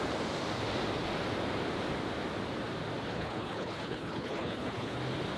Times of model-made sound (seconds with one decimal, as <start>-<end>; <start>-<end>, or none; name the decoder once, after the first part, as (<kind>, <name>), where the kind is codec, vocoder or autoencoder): 3.1-5.0 (codec, HILCodec)